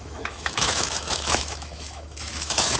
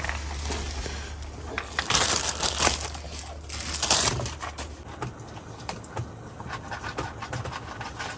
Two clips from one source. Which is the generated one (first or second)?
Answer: first